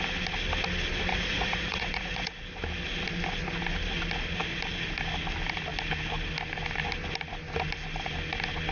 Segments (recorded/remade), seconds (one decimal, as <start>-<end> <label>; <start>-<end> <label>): 0.0-1.1 recorded; 1.1-2.4 remade; 2.4-8.7 recorded